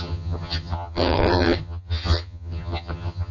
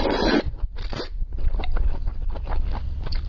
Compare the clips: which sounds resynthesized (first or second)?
first